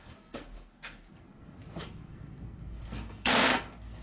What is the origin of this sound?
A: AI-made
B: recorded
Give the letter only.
A